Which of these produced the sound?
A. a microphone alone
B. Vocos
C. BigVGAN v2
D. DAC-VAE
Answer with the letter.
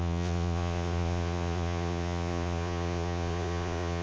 B